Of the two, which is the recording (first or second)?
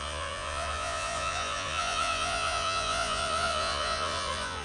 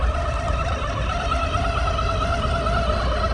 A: second